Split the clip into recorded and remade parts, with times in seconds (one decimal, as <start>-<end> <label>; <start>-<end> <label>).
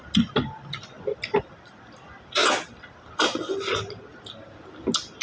0.0-5.2 recorded